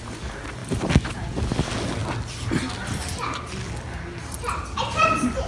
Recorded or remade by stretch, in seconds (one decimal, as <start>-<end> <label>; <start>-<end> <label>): 0.0-5.5 recorded